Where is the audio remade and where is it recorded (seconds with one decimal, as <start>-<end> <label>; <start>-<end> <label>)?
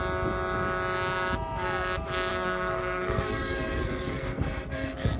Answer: 0.0-2.3 recorded; 2.3-5.2 remade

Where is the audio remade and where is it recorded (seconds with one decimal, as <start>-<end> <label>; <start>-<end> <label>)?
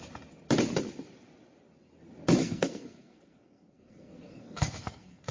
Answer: 0.0-2.4 recorded; 2.4-5.3 remade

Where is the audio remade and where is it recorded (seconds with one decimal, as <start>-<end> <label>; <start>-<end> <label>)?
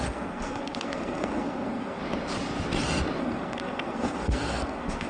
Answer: 0.0-2.0 remade; 2.0-3.2 recorded; 3.2-5.1 remade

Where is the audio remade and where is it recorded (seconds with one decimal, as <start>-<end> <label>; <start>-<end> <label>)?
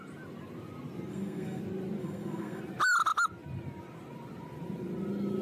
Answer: 0.0-1.1 recorded; 1.1-1.6 remade; 1.6-2.0 recorded; 2.0-2.6 remade; 2.6-5.4 recorded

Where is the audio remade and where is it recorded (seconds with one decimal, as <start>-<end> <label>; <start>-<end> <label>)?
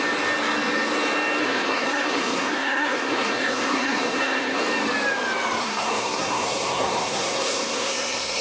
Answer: 0.0-1.4 recorded; 1.4-4.6 remade; 4.6-5.6 recorded; 5.6-8.4 remade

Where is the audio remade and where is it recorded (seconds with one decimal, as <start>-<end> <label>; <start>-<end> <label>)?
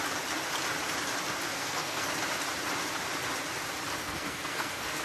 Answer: 0.0-1.5 recorded; 1.5-2.1 remade; 2.1-4.0 recorded; 4.0-5.0 remade